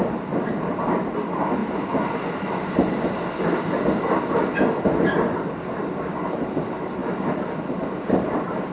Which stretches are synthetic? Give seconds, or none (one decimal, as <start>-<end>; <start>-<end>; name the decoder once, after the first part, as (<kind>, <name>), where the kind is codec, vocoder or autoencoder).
none